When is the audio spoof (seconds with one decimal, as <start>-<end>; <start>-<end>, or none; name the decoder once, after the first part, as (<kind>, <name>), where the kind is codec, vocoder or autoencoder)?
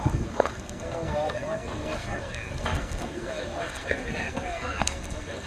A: 0.0-5.5 (codec, SNAC)